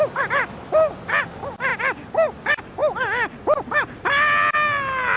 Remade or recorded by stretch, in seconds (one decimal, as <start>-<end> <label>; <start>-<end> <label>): 0.0-5.2 recorded